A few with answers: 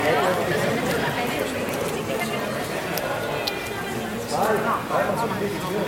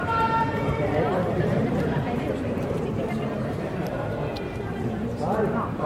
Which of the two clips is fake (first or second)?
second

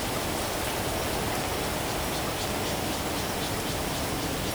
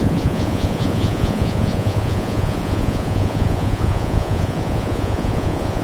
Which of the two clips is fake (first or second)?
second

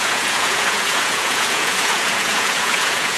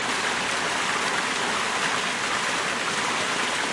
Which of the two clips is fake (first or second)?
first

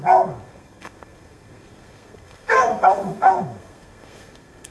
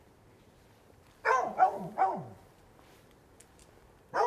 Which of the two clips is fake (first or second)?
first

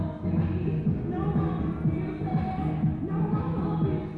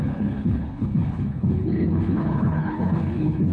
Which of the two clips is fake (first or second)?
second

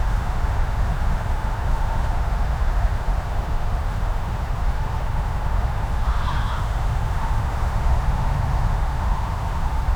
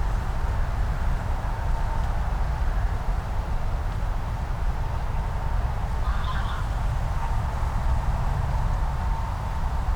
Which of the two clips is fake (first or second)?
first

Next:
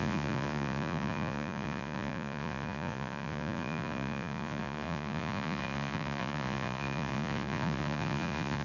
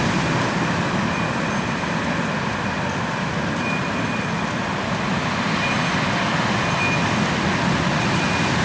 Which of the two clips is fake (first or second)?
first